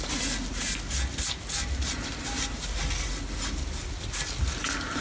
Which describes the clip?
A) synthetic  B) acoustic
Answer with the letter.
B